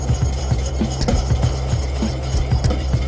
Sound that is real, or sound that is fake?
real